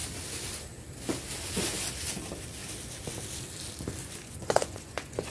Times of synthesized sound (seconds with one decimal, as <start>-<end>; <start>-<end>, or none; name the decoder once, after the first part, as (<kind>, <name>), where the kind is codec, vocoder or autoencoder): 4.0-5.3 (vocoder, Vocos)